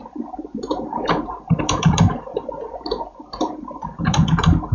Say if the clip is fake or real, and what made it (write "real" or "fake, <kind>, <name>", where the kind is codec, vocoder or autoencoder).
fake, vocoder, BigVGAN v2